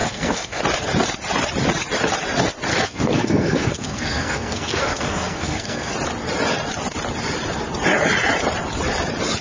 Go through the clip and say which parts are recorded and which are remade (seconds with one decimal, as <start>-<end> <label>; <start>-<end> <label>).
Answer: 0.0-0.6 remade; 0.6-2.7 recorded; 2.7-5.9 remade; 5.9-9.4 recorded